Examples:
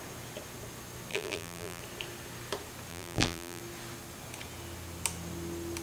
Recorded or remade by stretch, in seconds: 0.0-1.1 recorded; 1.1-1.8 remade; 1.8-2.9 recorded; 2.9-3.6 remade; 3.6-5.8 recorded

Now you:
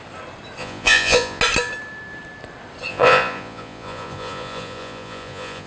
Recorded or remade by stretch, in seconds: 0.0-0.6 recorded; 0.6-1.4 remade; 1.4-2.9 recorded; 2.9-5.7 remade